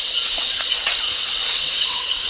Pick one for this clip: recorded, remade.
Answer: remade